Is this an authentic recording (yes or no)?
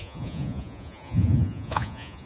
no